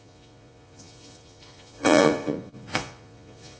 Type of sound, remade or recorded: remade